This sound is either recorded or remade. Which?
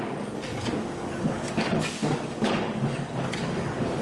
remade